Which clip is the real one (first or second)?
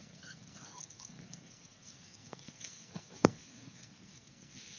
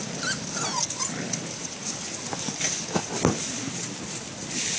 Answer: second